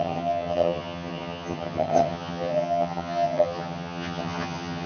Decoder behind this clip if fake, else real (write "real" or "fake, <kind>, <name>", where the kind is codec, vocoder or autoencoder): fake, vocoder, HiFi-GAN